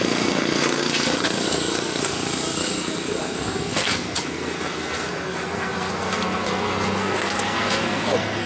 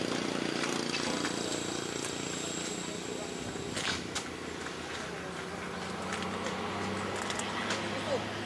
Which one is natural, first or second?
second